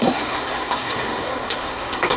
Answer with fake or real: fake